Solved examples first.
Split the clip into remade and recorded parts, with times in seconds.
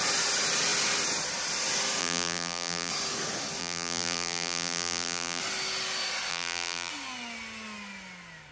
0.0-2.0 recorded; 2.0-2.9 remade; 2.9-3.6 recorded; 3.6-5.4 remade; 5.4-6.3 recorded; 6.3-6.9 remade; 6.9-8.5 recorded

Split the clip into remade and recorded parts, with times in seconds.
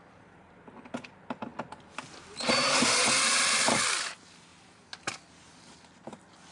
0.0-6.5 recorded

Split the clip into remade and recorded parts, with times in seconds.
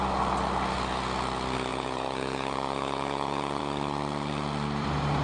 0.0-1.7 recorded; 1.7-3.6 remade; 3.6-5.2 recorded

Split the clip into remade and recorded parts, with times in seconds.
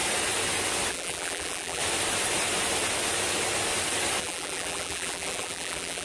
0.0-0.9 recorded; 0.9-1.8 remade; 1.8-4.2 recorded; 4.2-6.0 remade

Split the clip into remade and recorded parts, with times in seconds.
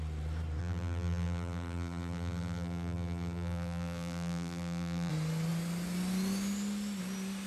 0.0-0.6 recorded; 0.6-5.1 remade; 5.1-7.5 recorded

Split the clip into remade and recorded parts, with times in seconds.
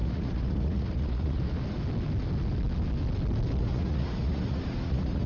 0.0-1.6 remade; 1.6-3.6 recorded; 3.6-5.3 remade